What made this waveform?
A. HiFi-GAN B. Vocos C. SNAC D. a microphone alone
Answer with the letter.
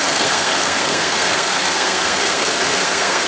C